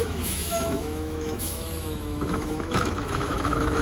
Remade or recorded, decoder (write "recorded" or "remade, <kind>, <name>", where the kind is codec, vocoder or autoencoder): remade, autoencoder, DAC-VAE